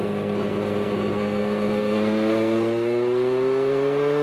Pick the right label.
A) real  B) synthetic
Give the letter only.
B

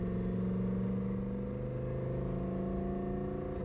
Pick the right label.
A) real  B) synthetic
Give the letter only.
A